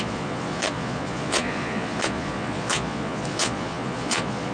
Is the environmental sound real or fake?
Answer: fake